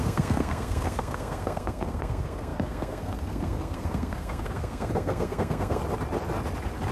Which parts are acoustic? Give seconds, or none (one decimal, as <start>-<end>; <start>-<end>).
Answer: 5.8-6.9